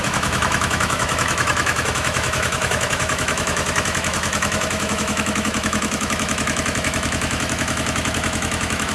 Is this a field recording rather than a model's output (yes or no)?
no